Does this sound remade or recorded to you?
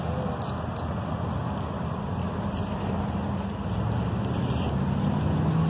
recorded